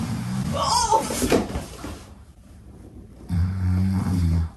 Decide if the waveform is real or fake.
fake